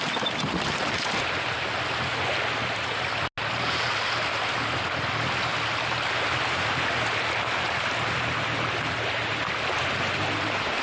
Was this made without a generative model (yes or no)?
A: yes